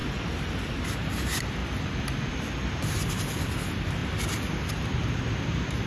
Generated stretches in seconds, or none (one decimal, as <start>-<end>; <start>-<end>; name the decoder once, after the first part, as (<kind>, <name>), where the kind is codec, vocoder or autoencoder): 0.5-1.6 (vocoder, BigVGAN v2); 2.3-4.0; 4.7-5.9